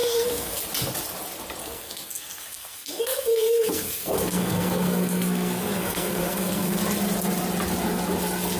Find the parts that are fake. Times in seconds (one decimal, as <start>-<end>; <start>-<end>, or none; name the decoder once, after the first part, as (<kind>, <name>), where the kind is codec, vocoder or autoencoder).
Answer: 0.0-0.6 (codec, SNAC); 1.6-6.8